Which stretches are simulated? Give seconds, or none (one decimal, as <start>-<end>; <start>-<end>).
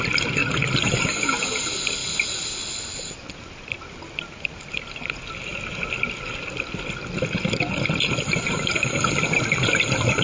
none